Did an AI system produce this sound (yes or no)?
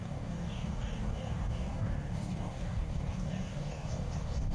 yes